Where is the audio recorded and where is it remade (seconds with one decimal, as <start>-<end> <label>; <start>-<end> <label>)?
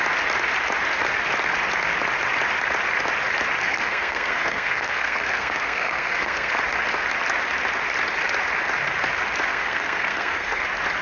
0.0-3.6 recorded; 3.6-6.5 remade; 6.5-9.5 recorded; 9.5-10.6 remade; 10.6-11.0 recorded